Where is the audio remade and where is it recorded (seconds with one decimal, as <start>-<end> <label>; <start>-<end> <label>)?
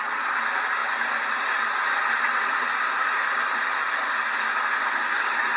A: 0.0-5.6 recorded